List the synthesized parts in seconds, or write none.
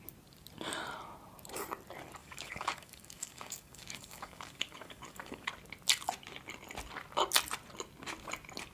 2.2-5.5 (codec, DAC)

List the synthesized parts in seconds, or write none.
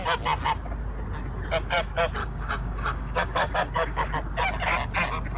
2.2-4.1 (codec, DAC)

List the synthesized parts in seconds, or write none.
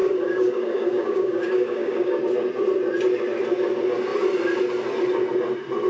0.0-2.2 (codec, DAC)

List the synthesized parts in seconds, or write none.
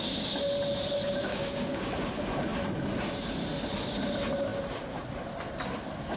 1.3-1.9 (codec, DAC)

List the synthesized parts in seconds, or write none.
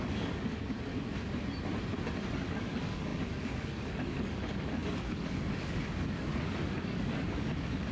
0.0-0.9 (codec, DAC); 2.5-7.9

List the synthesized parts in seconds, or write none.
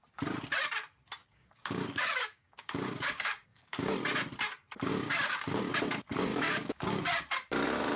1.2-3.9 (codec, DAC); 4.9-5.7; 6.3-7.0